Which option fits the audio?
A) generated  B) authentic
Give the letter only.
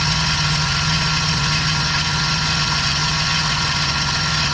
A